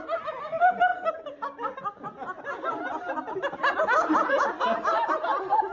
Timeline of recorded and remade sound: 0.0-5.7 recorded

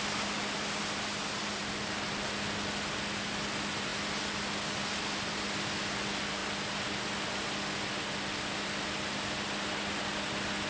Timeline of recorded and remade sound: 0.0-10.7 recorded

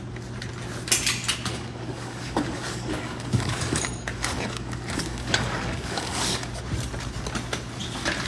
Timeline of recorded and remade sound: 0.0-1.5 recorded; 1.5-6.5 remade; 6.5-8.3 recorded

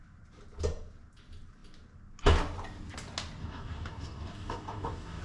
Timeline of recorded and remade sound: 0.0-3.4 recorded; 3.4-5.2 remade